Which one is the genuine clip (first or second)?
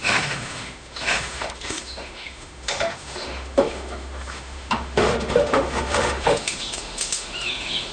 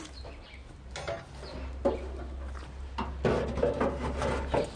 second